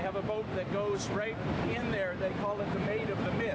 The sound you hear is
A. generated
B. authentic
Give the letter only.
B